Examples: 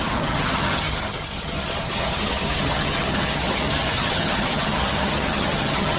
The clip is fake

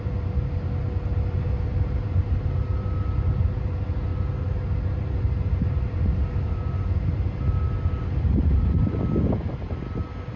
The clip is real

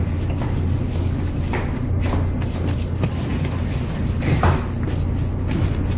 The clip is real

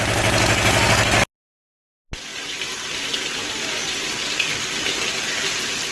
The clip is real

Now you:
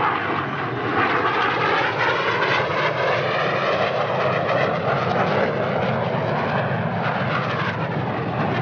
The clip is real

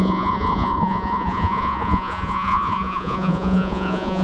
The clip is fake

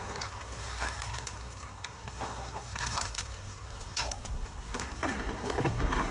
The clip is fake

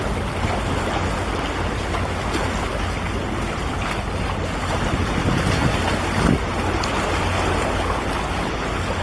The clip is real